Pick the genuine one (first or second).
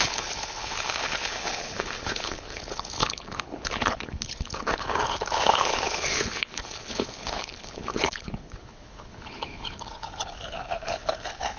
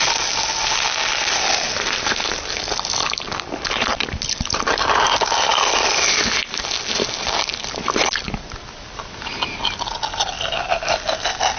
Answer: second